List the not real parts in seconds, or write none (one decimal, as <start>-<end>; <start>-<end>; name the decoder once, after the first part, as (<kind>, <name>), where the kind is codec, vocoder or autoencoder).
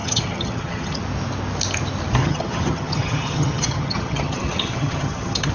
0.0-1.0 (vocoder, HiFi-GAN); 2.2-5.5